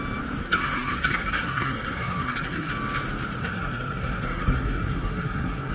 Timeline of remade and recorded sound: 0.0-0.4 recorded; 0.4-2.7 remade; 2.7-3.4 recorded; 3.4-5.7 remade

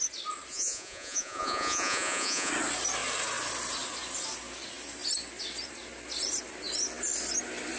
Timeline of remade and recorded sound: 0.0-0.5 recorded; 0.5-2.5 remade; 2.5-7.8 recorded

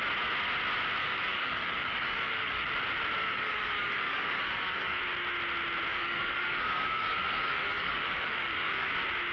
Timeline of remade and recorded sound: 0.0-1.0 recorded; 1.0-2.7 remade; 2.7-3.2 recorded; 3.2-5.0 remade; 5.0-5.9 recorded; 5.9-8.9 remade; 8.9-9.3 recorded

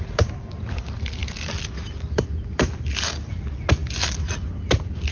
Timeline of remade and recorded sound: 0.0-5.1 recorded

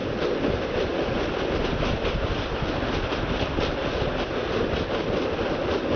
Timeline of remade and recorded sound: 0.0-0.9 recorded; 0.9-2.7 remade; 2.7-6.0 recorded